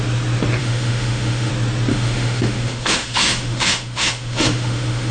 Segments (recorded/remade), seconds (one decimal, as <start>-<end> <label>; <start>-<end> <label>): 0.0-0.6 recorded; 0.6-1.5 remade; 1.5-1.9 recorded; 1.9-5.1 remade